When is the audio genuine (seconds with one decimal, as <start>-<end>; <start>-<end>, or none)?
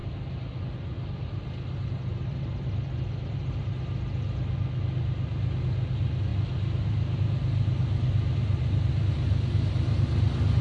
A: 0.0-2.1; 3.6-10.6